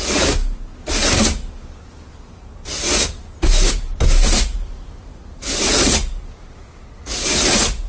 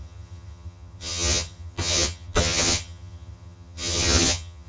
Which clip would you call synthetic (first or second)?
second